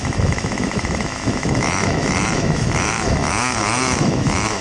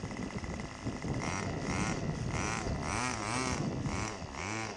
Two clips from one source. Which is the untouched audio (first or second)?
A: second